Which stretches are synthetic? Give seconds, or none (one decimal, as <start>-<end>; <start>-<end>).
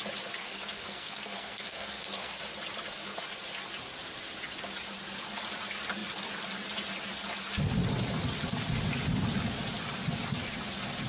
0.4-2.4